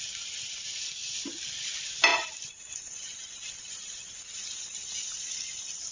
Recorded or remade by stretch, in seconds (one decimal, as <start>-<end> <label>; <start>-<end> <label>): 0.0-2.1 recorded; 2.1-2.6 remade; 2.6-5.9 recorded